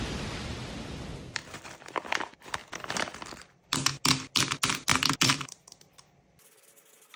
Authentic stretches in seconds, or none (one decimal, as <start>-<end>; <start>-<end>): 0.0-1.4; 1.9-4.9